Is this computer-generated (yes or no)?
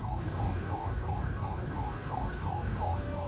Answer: yes